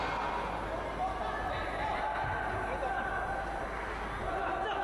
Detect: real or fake real